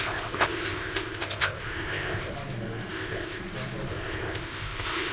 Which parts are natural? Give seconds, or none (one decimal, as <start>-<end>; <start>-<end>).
2.3-2.9; 3.4-3.9